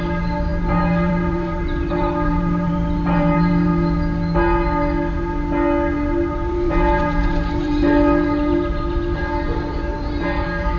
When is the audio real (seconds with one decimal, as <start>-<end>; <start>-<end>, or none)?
3.7-6.3

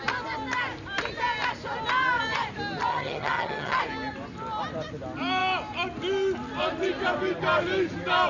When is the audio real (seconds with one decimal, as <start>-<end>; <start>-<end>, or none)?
0.0-2.9; 3.8-8.3